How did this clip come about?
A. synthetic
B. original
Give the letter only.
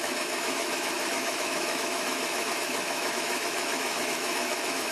A